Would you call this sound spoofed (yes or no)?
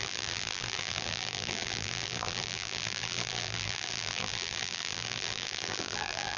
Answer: yes